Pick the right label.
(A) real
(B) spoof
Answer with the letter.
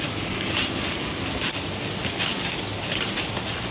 A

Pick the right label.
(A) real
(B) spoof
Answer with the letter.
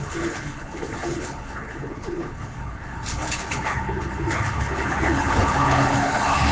B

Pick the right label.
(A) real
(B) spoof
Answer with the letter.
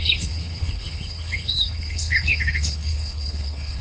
B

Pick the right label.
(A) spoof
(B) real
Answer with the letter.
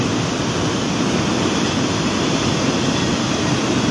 B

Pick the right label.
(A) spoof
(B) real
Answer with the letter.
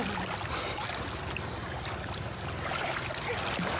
B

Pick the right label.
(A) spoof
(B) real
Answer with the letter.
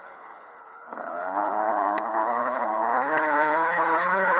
A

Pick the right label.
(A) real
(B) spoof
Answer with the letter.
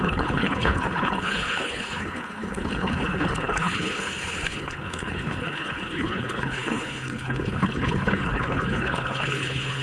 B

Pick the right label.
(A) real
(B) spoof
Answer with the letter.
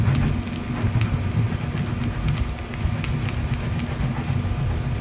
A